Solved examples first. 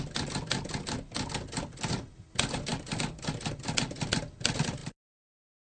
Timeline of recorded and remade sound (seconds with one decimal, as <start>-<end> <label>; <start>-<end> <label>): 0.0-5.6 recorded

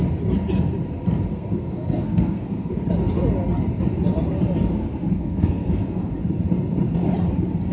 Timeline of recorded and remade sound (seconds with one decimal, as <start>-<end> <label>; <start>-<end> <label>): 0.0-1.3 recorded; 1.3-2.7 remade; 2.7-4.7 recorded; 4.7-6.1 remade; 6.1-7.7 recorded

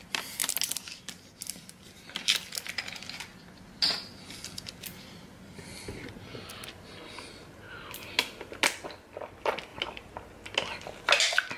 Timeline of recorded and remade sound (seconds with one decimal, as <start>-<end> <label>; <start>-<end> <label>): 0.0-11.6 recorded

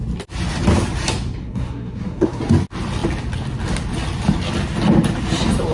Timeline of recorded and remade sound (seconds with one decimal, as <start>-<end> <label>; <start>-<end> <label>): 0.0-1.4 recorded; 1.4-2.4 remade; 2.4-5.7 recorded

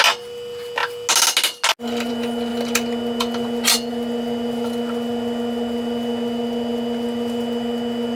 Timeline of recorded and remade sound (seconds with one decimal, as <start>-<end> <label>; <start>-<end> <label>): 0.0-8.1 recorded